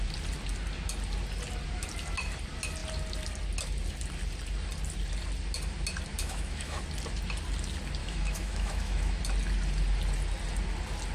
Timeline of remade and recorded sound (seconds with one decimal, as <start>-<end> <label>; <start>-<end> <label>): 0.0-6.2 recorded; 6.2-6.8 remade; 6.8-8.0 recorded; 8.0-9.2 remade; 9.2-11.1 recorded